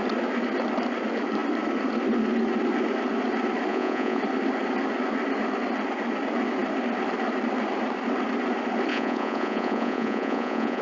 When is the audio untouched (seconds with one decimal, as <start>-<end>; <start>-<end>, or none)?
0.0-3.7; 4.2-8.9